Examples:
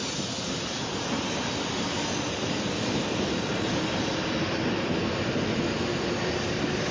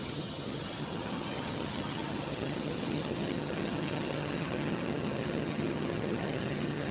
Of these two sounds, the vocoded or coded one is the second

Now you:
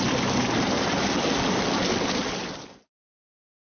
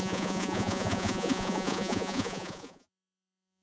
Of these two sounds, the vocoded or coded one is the second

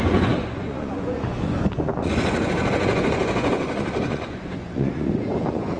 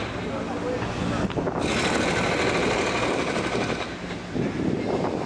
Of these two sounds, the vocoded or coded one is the first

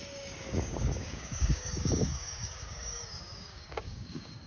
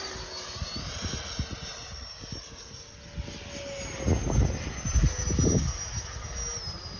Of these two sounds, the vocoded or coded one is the first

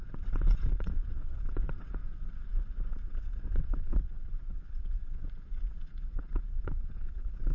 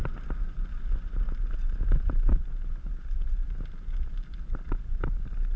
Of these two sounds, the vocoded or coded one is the first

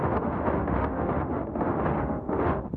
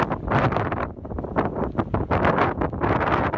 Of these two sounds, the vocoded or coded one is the first